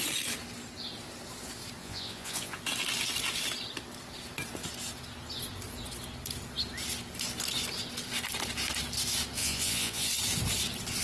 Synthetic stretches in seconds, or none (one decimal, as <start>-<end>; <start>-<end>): 1.8-2.6; 9.4-10.1